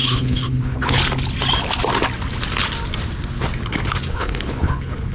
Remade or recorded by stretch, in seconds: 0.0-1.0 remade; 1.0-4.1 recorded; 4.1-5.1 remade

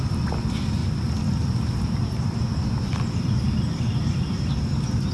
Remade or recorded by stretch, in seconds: 0.0-5.1 recorded